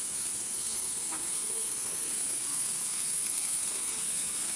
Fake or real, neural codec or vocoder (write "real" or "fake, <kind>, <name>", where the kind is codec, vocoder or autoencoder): fake, codec, SNAC